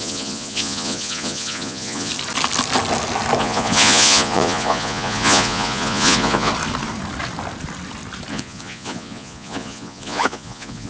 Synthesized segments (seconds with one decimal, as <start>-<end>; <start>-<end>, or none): 0.0-2.1; 3.4-6.5; 8.3-10.9